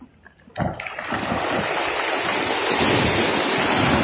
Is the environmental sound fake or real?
real